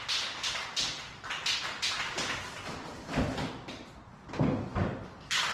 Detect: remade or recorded recorded